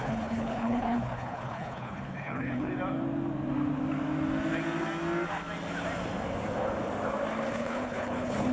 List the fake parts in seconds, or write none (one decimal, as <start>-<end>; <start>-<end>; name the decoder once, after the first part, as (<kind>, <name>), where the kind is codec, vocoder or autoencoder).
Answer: 0.0-2.7 (codec, HILCodec); 7.5-8.5